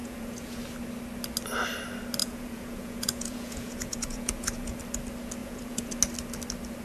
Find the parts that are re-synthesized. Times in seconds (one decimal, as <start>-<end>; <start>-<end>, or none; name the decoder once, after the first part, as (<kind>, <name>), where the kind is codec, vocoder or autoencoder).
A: 0.0-0.6 (vocoder, Vocos); 2.2-4.8; 5.4-5.9